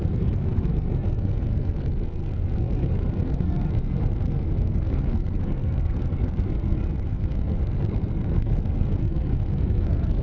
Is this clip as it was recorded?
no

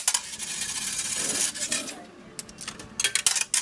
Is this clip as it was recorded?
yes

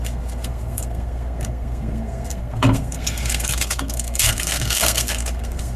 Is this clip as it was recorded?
no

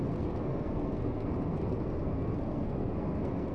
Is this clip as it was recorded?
no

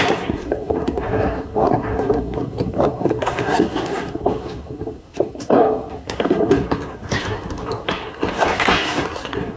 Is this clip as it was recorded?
no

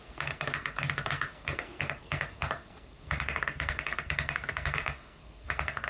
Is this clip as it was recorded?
no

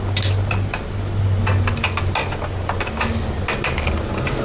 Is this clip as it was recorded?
yes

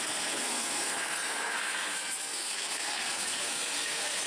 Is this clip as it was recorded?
no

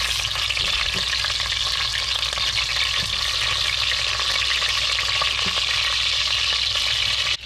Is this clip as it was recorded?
yes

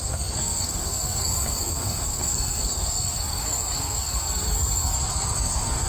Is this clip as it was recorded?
no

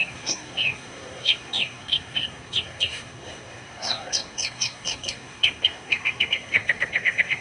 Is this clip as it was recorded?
no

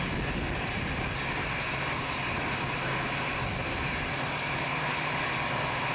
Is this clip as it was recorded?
yes